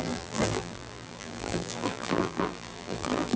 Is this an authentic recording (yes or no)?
no